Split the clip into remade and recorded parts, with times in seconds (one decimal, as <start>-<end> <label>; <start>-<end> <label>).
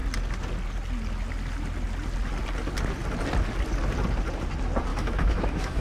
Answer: 0.0-4.9 recorded; 4.9-5.8 remade